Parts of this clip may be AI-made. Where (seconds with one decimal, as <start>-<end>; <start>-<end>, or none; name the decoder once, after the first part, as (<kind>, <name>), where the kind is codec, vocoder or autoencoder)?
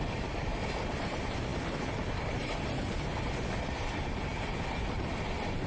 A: none